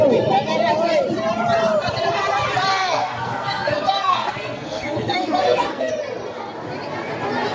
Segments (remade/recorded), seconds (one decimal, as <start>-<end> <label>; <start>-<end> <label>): 0.0-2.7 recorded; 2.7-5.9 remade; 5.9-7.5 recorded